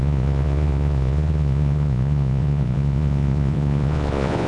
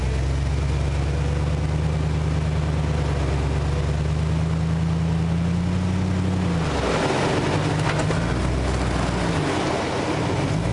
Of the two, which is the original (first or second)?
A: second